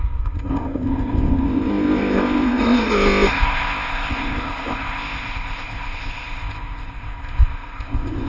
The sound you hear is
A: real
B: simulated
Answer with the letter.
B